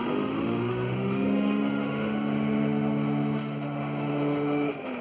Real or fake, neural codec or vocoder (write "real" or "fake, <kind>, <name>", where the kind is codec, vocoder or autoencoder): fake, autoencoder, DAC-VAE